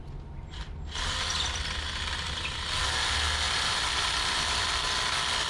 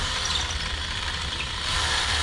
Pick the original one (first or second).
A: first